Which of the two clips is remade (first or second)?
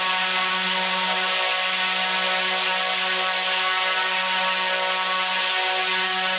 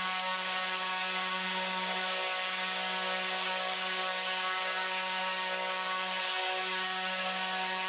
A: second